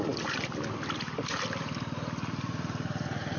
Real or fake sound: real